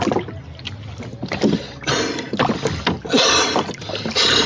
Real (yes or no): yes